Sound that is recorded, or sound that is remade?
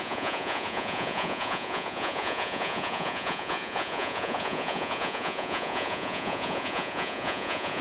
remade